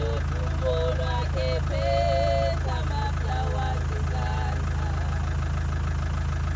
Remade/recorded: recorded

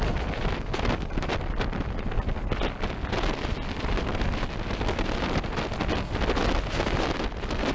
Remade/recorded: recorded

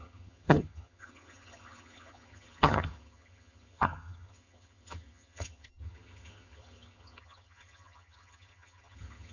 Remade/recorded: remade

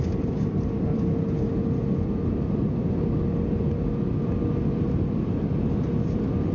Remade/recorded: recorded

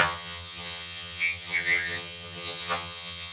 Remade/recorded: remade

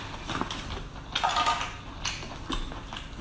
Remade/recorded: recorded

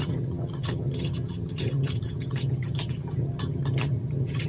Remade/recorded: remade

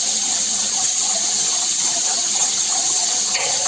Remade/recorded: remade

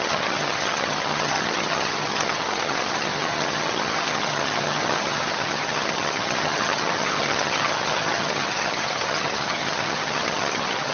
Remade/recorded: remade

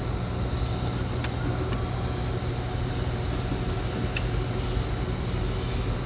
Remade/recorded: recorded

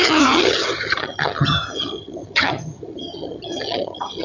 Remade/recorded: remade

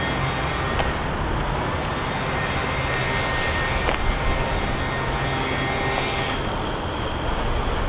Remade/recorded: recorded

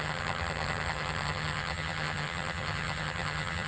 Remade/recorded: remade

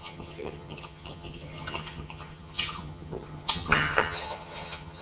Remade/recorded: remade